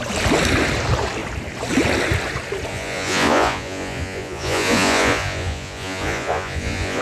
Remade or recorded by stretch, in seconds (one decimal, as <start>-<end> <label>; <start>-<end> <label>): 0.0-2.7 recorded; 2.7-7.0 remade